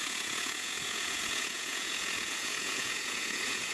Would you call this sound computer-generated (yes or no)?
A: yes